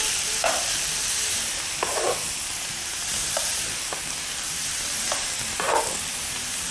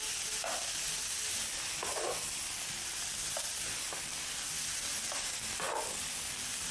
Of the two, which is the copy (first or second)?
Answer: first